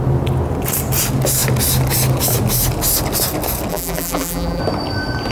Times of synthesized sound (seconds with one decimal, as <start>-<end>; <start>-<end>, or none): 3.7-4.6